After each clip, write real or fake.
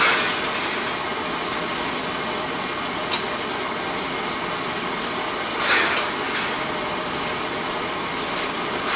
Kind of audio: real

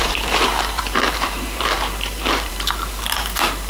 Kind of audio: fake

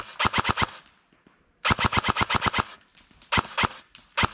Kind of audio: real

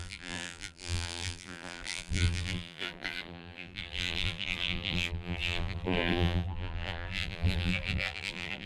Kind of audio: fake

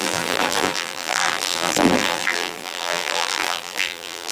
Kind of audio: fake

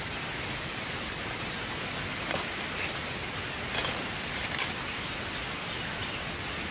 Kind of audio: real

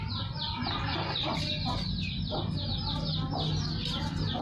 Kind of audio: real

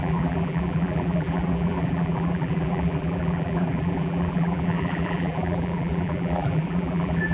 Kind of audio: fake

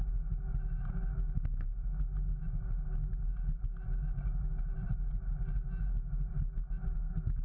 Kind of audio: real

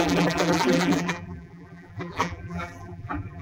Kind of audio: fake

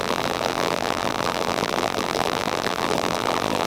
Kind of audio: fake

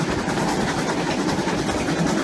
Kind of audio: real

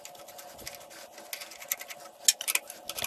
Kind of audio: real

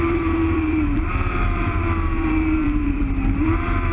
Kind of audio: fake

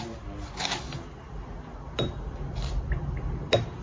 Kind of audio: real